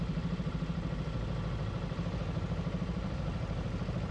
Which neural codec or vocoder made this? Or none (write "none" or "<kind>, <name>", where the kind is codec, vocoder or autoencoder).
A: none